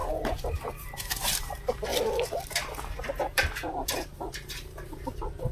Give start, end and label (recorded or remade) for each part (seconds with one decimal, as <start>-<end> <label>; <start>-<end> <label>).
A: 0.0-1.9 remade; 1.9-2.5 recorded; 2.5-5.5 remade